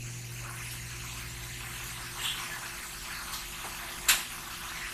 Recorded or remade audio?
recorded